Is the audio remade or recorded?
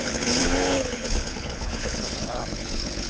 remade